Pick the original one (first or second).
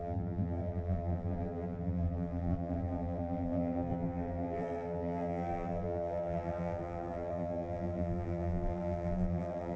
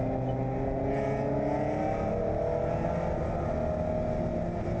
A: second